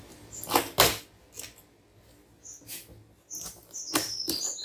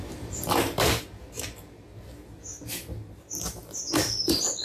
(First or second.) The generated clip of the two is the second